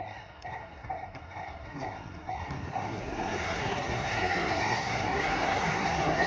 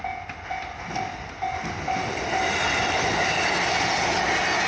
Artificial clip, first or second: first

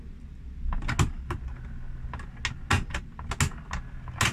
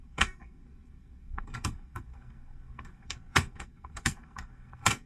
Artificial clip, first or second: second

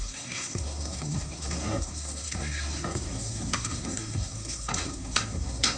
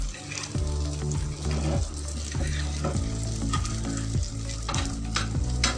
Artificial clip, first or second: first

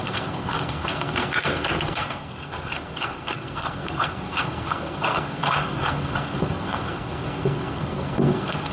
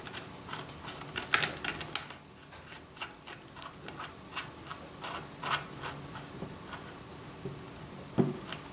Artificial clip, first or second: first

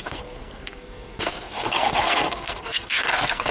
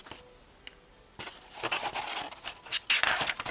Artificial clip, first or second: first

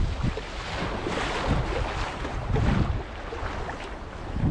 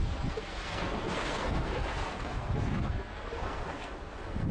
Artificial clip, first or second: second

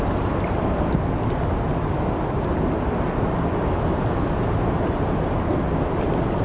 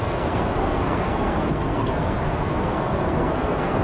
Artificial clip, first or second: second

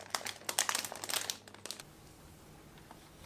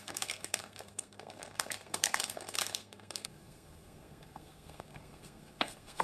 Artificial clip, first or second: second